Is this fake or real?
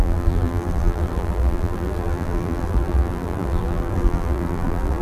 fake